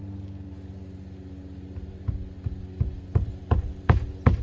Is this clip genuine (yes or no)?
yes